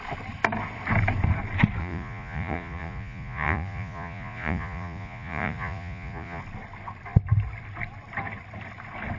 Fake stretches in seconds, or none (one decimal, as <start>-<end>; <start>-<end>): 1.8-6.4